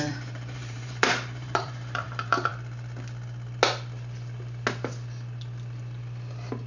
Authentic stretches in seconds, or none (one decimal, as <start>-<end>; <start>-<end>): 2.5-6.7